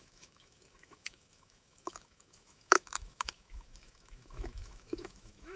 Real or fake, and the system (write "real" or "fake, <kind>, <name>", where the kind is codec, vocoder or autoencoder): fake, autoencoder, DAC-VAE